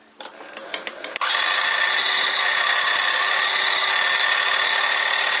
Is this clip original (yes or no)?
yes